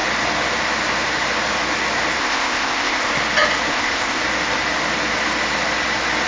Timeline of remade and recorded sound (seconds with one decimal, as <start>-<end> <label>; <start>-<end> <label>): 0.0-2.2 recorded; 2.2-3.1 remade; 3.1-3.7 recorded; 3.7-4.2 remade; 4.2-6.3 recorded